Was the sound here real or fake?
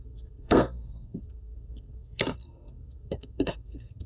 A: fake